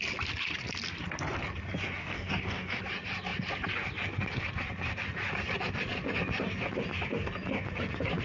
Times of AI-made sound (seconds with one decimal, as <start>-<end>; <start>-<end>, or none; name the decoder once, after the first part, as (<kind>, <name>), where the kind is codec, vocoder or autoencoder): 2.0-2.8 (codec, DAC)